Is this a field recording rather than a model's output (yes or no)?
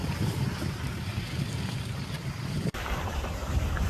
no